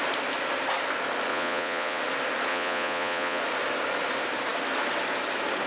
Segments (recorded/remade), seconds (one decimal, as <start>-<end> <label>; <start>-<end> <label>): 0.0-1.3 recorded; 1.3-2.0 remade; 2.0-2.5 recorded; 2.5-3.4 remade; 3.4-5.7 recorded